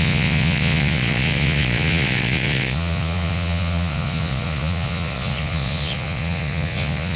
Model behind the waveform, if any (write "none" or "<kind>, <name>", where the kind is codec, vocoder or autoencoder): vocoder, Vocos